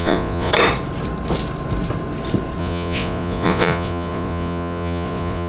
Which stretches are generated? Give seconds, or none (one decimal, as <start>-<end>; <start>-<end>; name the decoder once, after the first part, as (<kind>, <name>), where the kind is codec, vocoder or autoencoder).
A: 0.0-0.5 (vocoder, Vocos); 2.6-5.5